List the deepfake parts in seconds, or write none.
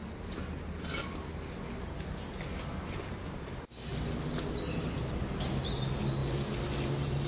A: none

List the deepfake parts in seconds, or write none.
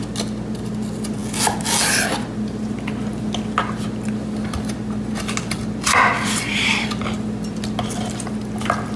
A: 5.6-7.0 (vocoder, BigVGAN v2)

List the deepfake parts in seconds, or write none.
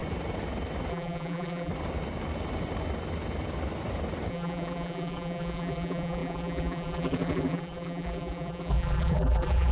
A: 0.9-1.7 (vocoder, BigVGAN v2); 4.3-9.7